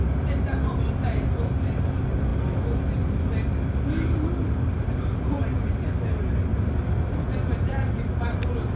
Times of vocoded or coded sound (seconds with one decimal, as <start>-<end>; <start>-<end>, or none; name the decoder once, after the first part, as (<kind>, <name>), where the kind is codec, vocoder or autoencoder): 6.5-7.1 (vocoder, BigVGAN v2)

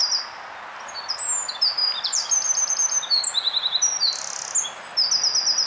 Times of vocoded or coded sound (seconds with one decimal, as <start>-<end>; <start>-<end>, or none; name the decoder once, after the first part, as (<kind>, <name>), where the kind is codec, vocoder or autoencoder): 1.8-2.7 (vocoder, BigVGAN v2)

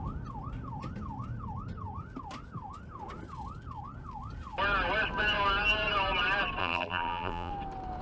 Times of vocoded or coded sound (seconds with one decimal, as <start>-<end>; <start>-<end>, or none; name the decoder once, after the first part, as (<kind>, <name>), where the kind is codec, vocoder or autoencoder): 6.6-7.5 (vocoder, BigVGAN v2)

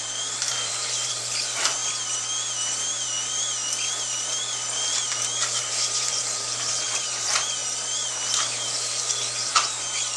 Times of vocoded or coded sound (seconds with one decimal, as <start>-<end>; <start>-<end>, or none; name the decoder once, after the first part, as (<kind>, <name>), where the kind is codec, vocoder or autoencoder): 0.0-1.8 (vocoder, BigVGAN v2); 5.6-7.6; 9.4-10.2

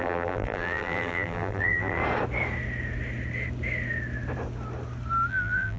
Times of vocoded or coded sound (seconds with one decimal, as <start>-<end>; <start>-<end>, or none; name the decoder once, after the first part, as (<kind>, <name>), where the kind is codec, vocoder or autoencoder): 0.0-2.0 (vocoder, BigVGAN v2); 5.3-5.8